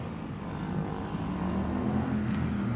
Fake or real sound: real